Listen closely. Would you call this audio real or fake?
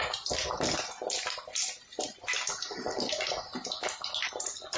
real